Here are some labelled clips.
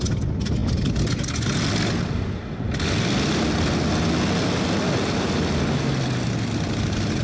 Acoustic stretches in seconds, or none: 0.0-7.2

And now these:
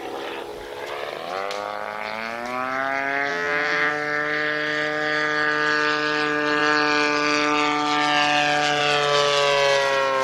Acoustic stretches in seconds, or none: 0.0-3.3; 3.9-10.2

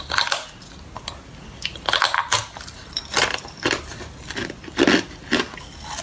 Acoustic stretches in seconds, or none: 0.0-6.0

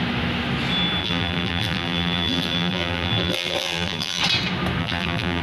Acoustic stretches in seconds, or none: 0.0-1.0; 4.2-4.8

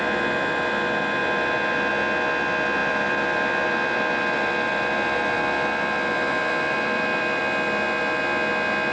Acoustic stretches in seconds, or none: 0.0-2.8; 7.4-8.9

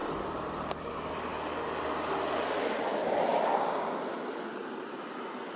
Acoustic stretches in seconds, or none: 0.9-5.6